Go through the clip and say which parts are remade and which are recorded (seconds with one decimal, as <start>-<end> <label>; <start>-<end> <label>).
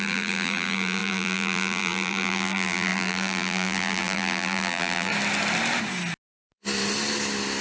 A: 0.0-5.1 remade; 5.1-7.6 recorded